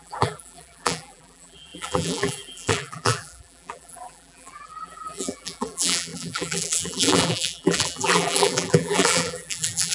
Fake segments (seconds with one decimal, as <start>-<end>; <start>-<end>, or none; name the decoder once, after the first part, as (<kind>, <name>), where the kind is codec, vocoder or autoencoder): 0.0-9.9 (vocoder, BigVGAN v2)

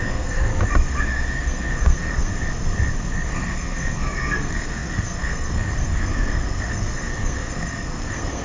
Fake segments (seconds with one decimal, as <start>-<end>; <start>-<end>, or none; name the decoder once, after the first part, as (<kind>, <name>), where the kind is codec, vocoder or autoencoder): 0.0-0.5 (codec, SNAC); 1.0-2.3; 3.3-8.4